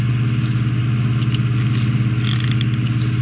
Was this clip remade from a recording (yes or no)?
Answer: no